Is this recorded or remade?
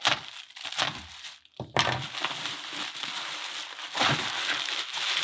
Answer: recorded